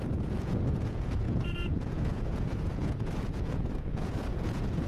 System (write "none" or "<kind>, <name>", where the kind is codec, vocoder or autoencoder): vocoder, Vocos